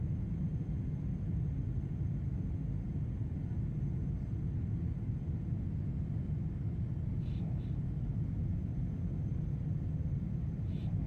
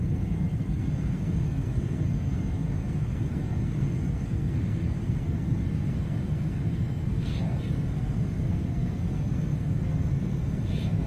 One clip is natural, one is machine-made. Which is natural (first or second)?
first